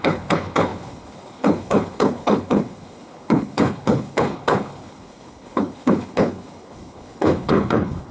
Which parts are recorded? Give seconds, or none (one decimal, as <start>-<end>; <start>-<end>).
none